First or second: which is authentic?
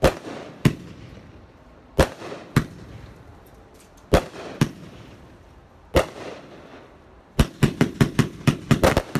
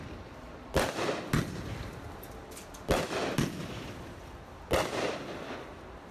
second